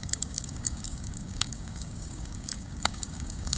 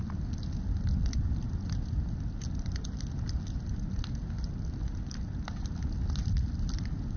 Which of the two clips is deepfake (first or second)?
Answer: first